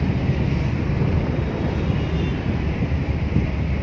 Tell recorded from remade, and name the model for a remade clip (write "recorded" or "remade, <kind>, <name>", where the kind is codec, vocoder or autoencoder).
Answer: recorded